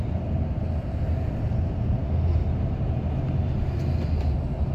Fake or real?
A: real